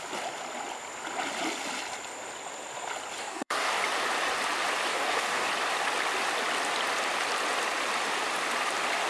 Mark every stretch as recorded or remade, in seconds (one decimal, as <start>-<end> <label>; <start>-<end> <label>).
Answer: 0.0-3.2 recorded; 3.2-3.8 remade; 3.8-4.9 recorded; 4.9-5.5 remade; 5.5-9.1 recorded